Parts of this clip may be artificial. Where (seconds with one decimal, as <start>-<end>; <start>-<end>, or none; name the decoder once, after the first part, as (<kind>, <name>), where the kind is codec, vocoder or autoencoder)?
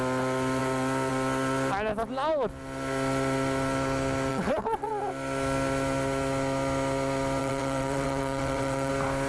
4.3-4.9 (vocoder, WaveNeXt); 7.4-8.9